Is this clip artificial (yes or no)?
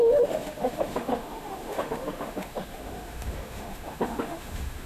yes